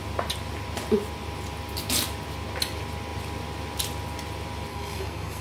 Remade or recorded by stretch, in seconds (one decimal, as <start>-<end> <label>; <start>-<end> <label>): 0.0-4.7 recorded; 4.7-5.4 remade